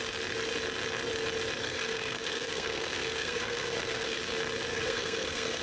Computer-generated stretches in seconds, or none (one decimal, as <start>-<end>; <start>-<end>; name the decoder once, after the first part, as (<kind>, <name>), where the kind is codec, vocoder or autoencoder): 1.6-4.2 (codec, SNAC); 4.7-5.6